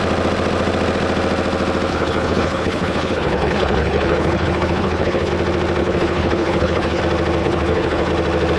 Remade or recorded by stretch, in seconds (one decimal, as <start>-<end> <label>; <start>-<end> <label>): 0.0-1.9 recorded; 1.9-5.3 remade; 5.3-5.8 recorded; 5.8-7.0 remade; 7.0-7.4 recorded; 7.4-8.1 remade; 8.1-8.6 recorded